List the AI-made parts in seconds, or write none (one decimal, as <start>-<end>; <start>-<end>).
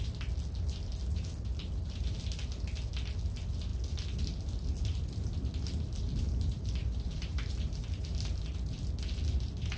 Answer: 1.6-2.2; 6.1-8.4